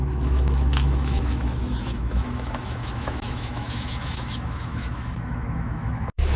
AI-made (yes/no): yes